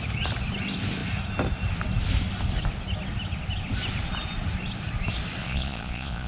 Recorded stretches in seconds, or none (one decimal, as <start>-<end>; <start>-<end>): 0.0-5.4